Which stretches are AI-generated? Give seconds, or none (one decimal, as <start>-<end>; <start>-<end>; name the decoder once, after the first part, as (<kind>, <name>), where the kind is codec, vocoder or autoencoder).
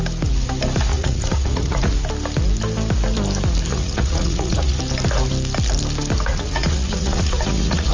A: 0.9-1.9 (vocoder, Vocos); 3.7-4.8; 6.3-7.9